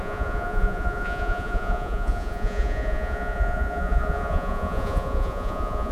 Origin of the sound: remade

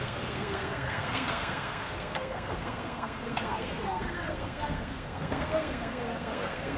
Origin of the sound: remade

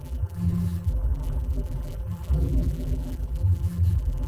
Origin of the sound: remade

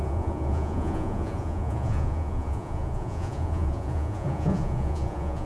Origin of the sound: remade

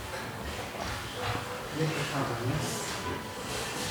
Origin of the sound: recorded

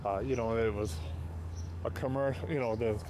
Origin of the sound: remade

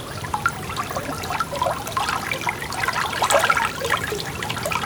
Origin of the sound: recorded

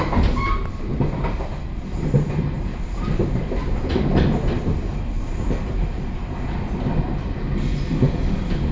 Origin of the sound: recorded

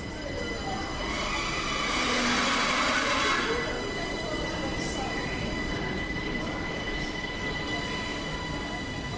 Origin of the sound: recorded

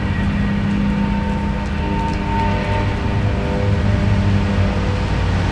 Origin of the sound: recorded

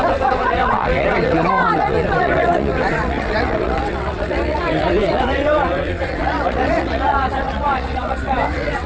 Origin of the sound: remade